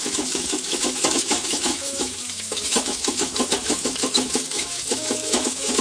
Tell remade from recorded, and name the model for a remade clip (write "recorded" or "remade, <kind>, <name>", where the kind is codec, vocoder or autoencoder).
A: remade, autoencoder, DAC-VAE